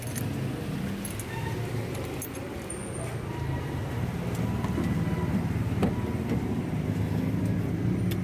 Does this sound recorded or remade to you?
recorded